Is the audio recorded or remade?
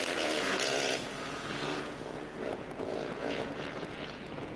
remade